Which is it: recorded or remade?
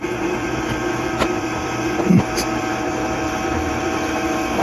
remade